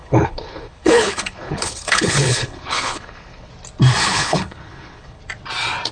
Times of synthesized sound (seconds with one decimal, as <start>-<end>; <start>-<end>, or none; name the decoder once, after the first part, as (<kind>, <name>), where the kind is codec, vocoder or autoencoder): 0.0-3.5 (codec, HILCodec); 4.0-5.2